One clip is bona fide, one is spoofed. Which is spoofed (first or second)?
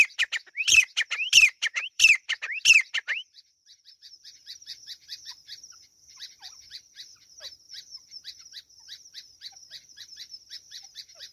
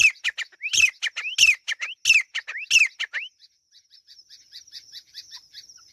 first